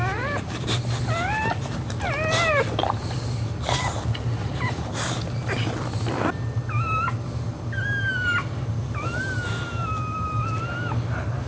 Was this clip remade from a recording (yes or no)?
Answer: no